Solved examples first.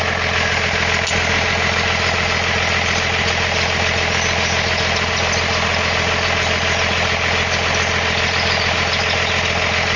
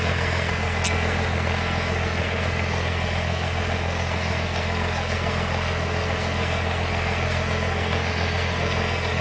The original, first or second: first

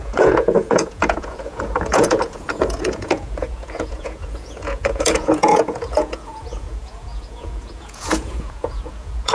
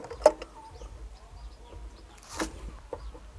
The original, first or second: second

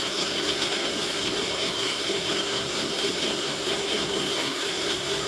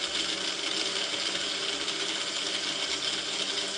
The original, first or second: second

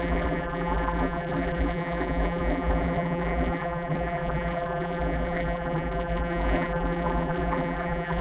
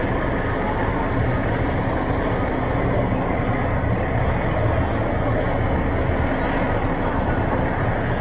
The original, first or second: second